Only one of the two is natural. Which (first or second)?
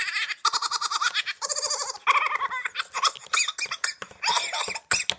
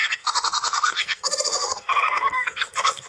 first